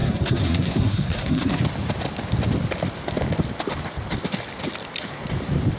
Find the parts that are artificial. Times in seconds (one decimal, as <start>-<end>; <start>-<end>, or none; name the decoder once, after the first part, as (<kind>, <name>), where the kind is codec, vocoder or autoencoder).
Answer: 0.0-1.6 (codec, SNAC)